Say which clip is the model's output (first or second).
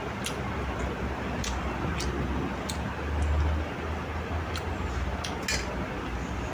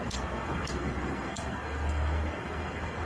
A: second